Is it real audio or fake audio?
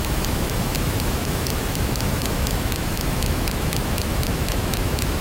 fake